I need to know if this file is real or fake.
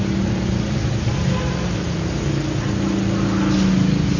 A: real